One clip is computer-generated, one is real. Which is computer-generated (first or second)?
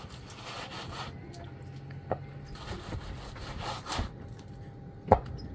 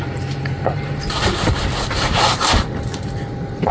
second